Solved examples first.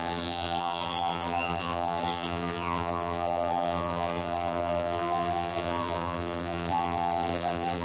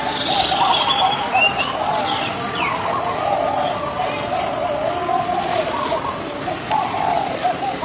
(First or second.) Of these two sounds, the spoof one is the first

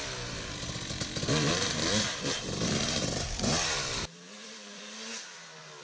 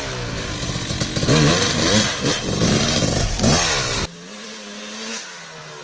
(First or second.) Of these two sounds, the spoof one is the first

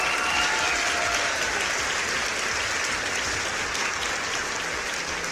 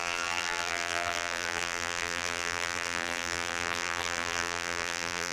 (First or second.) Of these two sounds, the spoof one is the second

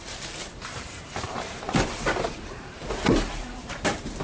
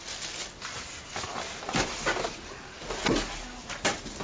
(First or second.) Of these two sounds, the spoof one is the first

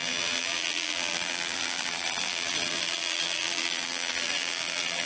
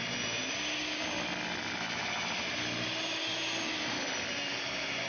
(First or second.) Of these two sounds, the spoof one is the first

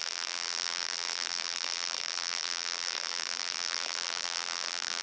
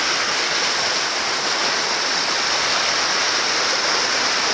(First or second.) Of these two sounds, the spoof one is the first